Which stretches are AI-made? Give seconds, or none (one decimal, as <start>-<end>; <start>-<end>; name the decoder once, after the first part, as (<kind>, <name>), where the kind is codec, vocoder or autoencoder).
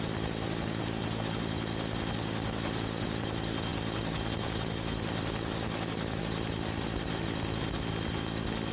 none